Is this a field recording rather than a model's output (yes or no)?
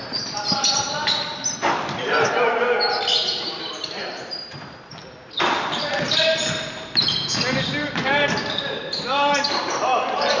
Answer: no